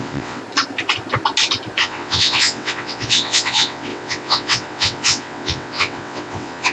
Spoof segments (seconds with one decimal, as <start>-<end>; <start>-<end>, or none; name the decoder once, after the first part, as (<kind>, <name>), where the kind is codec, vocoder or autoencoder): 0.0-0.4 (vocoder, WaveNeXt); 1.8-6.7